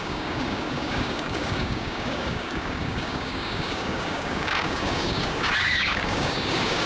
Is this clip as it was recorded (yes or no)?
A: no